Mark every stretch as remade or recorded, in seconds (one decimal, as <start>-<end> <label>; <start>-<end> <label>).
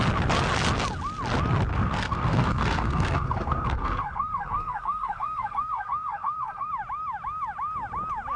0.0-1.7 recorded; 1.7-6.7 remade; 6.7-8.4 recorded